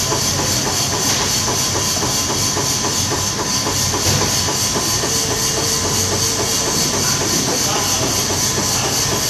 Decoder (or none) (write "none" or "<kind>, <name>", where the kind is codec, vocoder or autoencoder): vocoder, BigVGAN v2